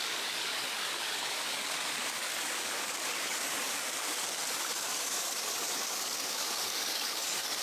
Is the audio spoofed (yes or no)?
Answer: yes